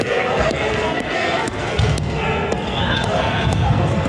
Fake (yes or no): yes